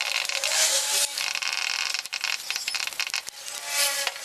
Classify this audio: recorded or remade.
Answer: recorded